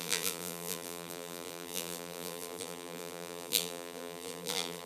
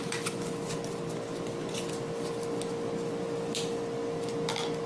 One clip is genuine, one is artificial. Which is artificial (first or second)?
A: first